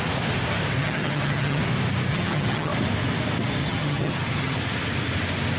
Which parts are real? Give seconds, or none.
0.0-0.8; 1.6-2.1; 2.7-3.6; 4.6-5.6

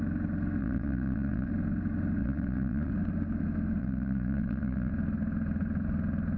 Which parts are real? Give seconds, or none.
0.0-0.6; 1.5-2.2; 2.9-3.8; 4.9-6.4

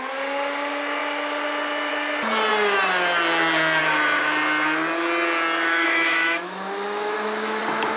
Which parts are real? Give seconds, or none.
0.0-5.7; 7.6-8.0